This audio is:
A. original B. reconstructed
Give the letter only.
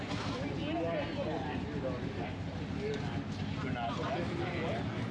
A